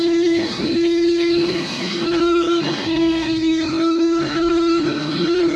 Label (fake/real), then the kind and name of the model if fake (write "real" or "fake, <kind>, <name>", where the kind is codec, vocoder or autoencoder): fake, codec, SNAC